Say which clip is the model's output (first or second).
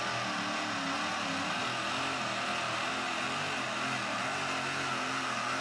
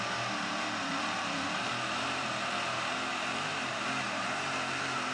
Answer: second